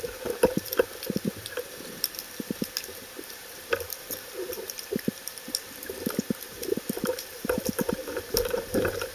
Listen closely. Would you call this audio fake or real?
fake